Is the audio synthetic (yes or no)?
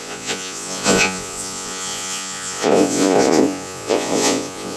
yes